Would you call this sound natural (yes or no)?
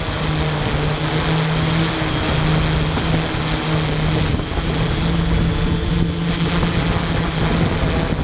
yes